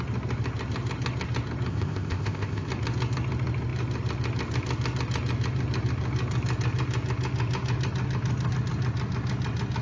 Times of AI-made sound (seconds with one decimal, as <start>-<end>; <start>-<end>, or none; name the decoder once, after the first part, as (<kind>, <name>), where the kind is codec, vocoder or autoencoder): 1.7-2.7 (codec, ZipCodec)